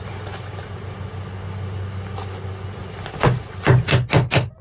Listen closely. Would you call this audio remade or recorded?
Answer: recorded